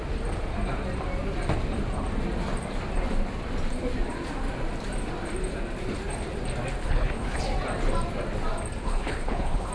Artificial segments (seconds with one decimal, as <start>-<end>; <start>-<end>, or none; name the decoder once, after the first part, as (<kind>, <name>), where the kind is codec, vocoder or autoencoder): 6.8-7.4 (codec, HILCodec); 8.8-9.7